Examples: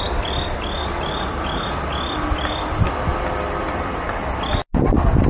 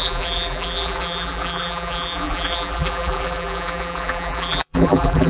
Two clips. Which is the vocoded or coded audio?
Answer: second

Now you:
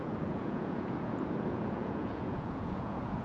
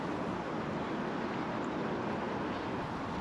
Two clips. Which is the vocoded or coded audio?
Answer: first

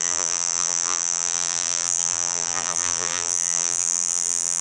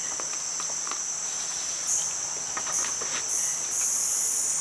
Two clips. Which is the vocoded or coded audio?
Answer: first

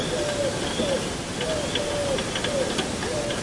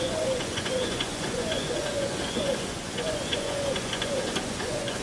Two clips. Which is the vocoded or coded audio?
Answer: second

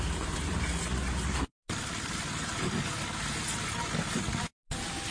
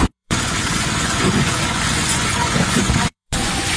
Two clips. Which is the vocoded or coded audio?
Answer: second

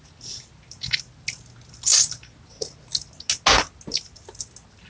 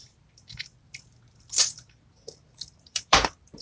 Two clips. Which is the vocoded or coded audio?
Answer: second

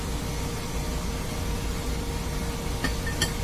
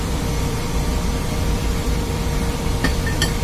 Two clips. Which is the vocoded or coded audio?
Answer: second